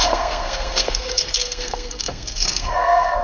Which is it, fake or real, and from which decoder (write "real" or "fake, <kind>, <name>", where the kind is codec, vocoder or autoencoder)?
fake, codec, SNAC